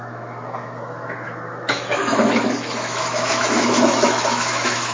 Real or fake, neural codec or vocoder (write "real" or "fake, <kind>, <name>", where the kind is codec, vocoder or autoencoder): fake, autoencoder, DAC-VAE